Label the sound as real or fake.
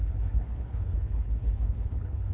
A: fake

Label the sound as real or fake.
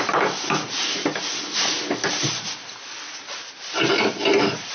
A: real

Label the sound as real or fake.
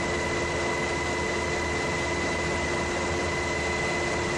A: real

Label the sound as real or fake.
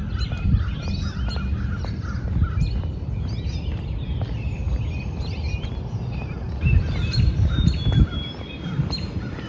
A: real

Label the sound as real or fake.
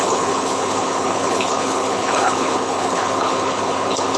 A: fake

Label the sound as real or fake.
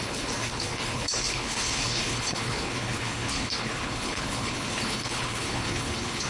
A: fake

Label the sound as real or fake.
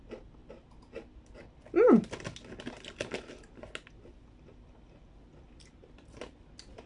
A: real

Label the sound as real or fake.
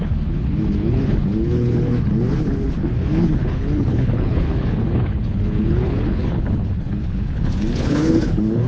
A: fake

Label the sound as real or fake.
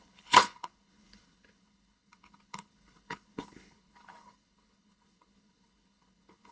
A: fake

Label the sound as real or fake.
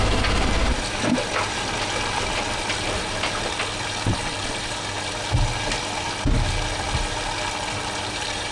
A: real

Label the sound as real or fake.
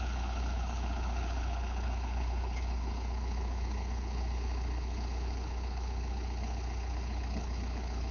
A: fake